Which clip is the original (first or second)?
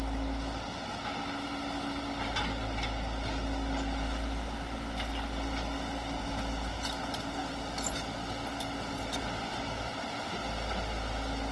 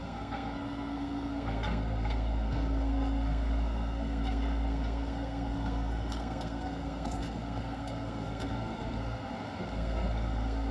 first